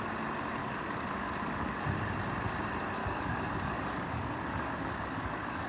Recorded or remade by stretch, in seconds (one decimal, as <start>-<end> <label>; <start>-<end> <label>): 0.0-0.6 recorded; 0.6-1.8 remade; 1.8-3.0 recorded; 3.0-5.7 remade